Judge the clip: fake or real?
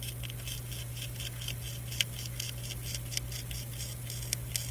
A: real